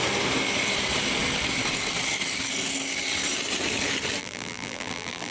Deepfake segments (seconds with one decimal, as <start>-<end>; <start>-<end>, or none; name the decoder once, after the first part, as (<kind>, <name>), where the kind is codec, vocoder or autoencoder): 4.2-5.3 (vocoder, BigVGAN v2)